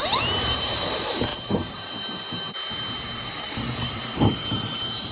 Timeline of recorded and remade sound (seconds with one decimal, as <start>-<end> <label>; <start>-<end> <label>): 0.0-5.1 remade